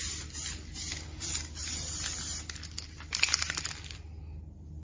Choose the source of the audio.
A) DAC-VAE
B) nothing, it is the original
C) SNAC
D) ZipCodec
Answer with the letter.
B